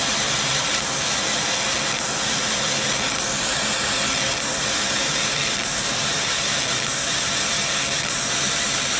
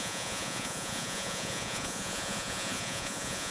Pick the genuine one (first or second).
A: first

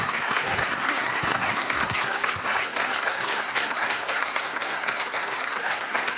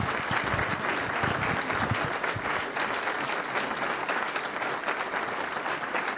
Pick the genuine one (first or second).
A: second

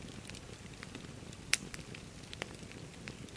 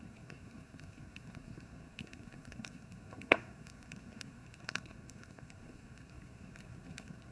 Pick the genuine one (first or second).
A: first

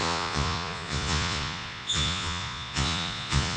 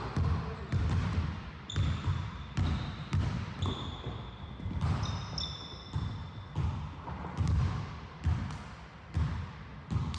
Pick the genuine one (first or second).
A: second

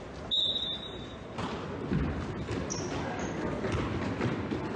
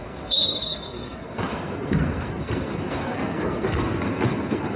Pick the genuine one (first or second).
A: first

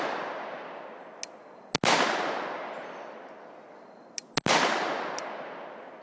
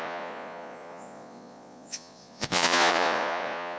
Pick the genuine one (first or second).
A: first